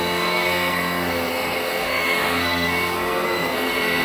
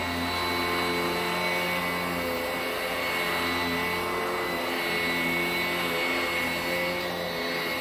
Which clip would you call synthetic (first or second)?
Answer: first